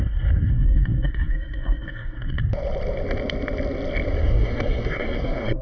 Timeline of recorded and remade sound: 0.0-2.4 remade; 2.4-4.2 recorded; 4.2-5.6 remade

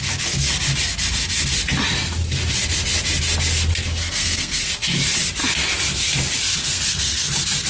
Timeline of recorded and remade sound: 0.0-4.0 recorded; 4.0-4.7 remade; 4.7-6.6 recorded; 6.6-7.3 remade; 7.3-7.7 recorded

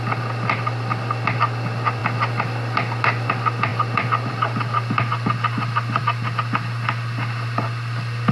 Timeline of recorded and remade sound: 0.0-8.3 recorded

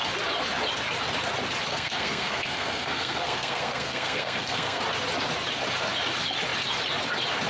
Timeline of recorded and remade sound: 0.0-1.7 recorded; 1.7-4.8 remade; 4.8-7.5 recorded

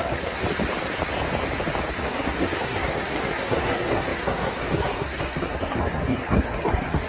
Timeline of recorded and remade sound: 0.0-0.4 remade; 0.4-2.0 recorded; 2.0-7.1 remade

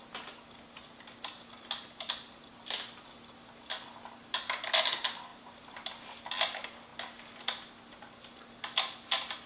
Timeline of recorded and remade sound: 0.0-9.5 recorded

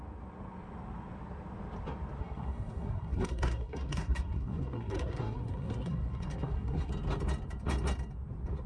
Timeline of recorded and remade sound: 0.0-2.2 recorded; 2.2-6.9 remade; 6.9-8.7 recorded

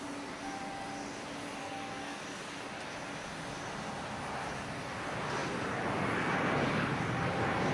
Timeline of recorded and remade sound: 0.0-1.6 recorded; 1.6-2.2 remade; 2.2-7.7 recorded